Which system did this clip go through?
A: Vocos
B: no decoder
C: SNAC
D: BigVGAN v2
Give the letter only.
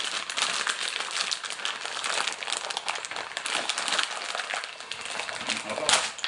B